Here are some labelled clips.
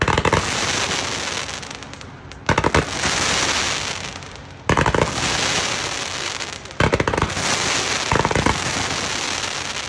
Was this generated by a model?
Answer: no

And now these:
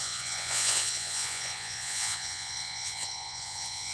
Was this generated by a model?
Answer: yes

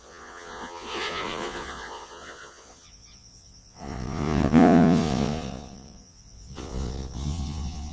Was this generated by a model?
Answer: yes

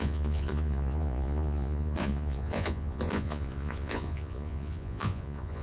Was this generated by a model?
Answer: yes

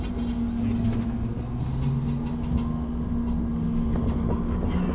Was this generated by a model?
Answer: no